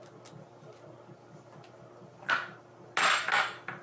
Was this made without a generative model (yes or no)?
yes